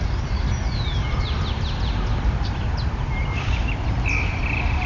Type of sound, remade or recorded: recorded